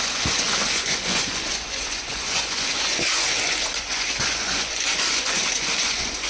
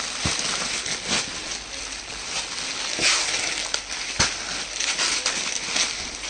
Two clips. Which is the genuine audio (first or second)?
second